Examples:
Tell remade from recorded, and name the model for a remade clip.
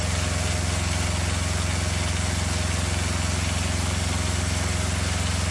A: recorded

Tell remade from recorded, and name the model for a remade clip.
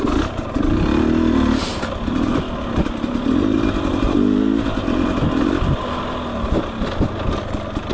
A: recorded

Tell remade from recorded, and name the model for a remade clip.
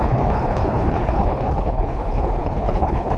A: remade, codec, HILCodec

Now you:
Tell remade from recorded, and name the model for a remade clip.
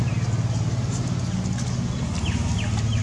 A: recorded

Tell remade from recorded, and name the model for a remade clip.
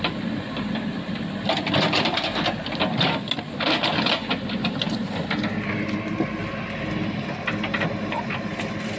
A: recorded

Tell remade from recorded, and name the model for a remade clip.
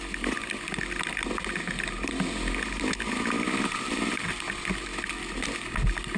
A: recorded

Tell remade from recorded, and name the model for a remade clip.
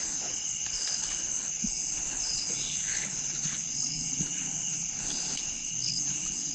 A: remade, codec, HILCodec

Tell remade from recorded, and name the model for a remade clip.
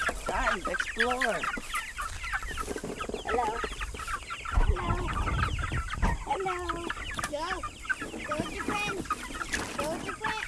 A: recorded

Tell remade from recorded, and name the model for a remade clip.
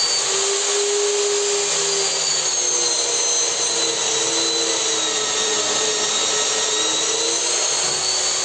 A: recorded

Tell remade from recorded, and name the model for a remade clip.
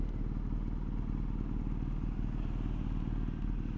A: recorded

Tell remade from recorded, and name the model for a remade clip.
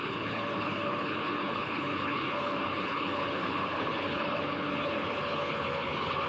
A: remade, codec, HILCodec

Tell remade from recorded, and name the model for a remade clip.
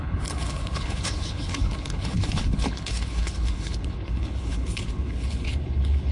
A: remade, codec, HILCodec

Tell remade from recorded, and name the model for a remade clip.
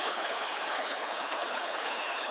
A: remade, codec, HILCodec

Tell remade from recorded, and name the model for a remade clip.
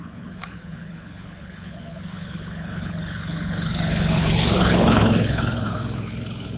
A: remade, codec, HILCodec